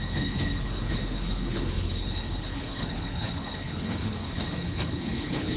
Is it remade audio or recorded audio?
remade